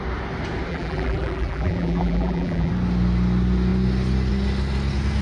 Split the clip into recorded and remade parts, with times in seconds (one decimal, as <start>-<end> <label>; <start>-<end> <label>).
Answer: 0.0-0.7 recorded; 0.7-2.7 remade; 2.7-5.2 recorded